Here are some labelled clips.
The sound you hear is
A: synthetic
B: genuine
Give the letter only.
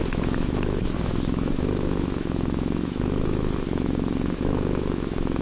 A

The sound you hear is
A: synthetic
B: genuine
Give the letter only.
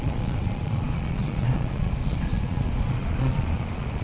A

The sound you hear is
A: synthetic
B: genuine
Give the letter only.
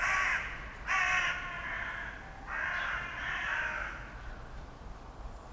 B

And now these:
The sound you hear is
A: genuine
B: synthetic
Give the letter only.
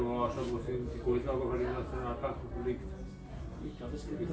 A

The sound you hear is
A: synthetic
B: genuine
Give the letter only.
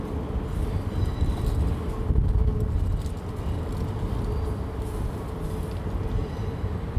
B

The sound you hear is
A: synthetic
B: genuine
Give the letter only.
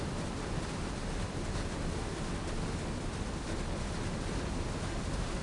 B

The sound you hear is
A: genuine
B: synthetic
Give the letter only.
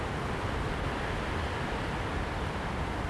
A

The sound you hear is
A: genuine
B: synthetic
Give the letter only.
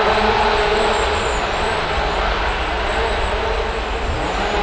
A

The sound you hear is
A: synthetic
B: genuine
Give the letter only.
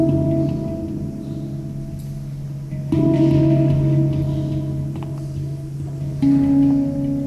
B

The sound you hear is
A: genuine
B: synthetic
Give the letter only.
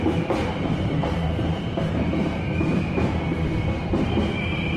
B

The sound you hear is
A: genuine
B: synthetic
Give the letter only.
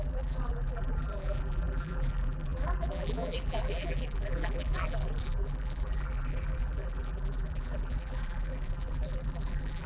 B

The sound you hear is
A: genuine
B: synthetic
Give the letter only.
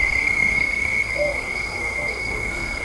B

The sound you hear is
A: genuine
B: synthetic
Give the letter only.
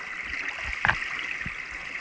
A